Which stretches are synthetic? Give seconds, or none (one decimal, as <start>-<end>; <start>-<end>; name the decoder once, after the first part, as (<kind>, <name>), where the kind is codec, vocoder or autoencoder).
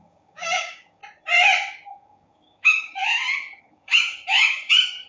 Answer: 0.0-1.0 (codec, DAC); 1.7-3.0; 3.6-5.1